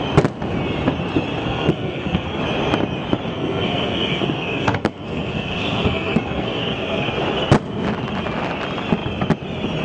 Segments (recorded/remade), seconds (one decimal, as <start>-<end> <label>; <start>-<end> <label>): 0.0-1.4 recorded; 1.4-2.4 remade; 2.4-3.3 recorded; 3.3-7.1 remade; 7.1-9.8 recorded

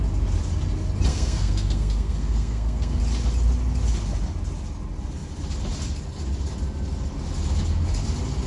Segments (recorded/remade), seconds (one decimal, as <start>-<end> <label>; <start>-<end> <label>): 0.0-1.1 recorded; 1.1-3.0 remade; 3.0-8.5 recorded